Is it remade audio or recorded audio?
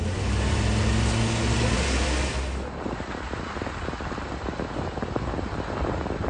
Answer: recorded